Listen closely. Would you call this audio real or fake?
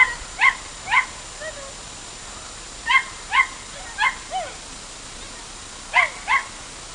real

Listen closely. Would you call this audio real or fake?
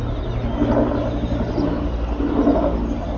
real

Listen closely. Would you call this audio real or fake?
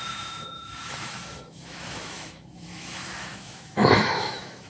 fake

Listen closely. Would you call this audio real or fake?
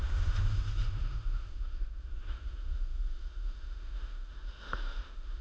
fake